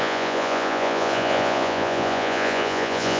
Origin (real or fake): fake